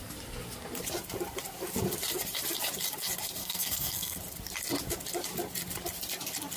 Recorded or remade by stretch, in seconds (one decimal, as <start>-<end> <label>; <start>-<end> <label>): 0.0-3.4 recorded; 3.4-4.2 remade; 4.2-6.6 recorded